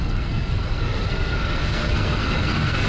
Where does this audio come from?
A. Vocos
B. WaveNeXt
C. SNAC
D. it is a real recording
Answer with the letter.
C